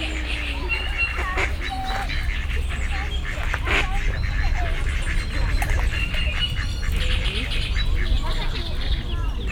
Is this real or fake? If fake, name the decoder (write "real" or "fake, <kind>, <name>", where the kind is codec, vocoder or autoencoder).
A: real